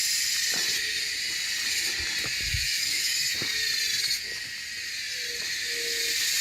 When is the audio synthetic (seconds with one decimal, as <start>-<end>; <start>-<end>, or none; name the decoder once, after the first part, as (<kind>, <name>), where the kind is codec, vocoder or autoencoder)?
2.5-3.1 (autoencoder, DAC-VAE)